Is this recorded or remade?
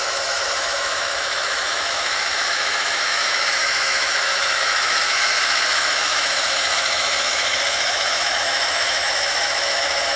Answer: remade